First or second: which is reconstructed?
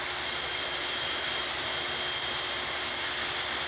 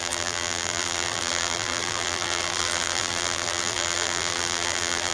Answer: second